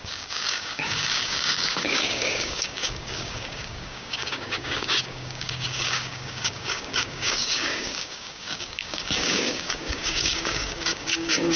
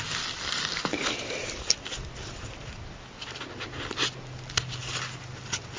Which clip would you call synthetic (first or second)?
first